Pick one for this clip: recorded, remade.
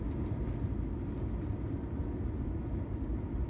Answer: recorded